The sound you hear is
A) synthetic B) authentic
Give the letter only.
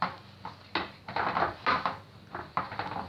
B